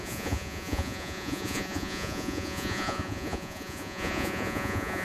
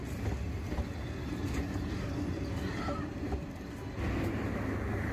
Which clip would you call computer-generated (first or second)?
first